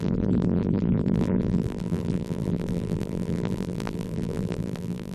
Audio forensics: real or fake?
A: fake